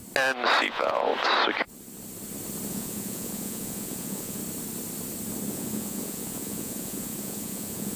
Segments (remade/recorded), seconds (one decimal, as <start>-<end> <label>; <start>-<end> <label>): 0.0-0.6 recorded; 0.6-1.1 remade; 1.1-2.7 recorded; 2.7-4.4 remade; 4.4-5.5 recorded; 5.5-8.0 remade